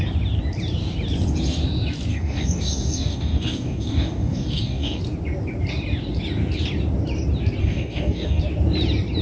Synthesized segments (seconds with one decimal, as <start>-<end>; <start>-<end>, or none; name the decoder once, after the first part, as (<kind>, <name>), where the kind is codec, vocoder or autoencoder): 2.1-5.0 (codec, DAC); 7.6-8.4